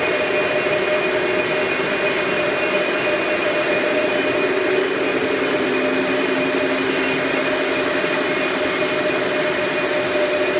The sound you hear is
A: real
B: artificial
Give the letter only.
A